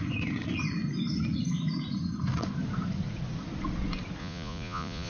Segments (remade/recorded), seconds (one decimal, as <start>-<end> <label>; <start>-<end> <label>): 0.0-4.2 recorded; 4.2-5.1 remade